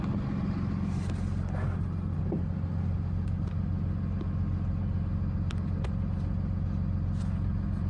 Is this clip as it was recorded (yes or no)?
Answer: yes